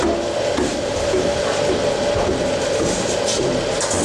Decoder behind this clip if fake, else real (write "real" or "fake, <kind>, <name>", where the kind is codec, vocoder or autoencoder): real